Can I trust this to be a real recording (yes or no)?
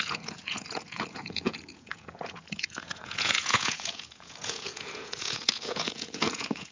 no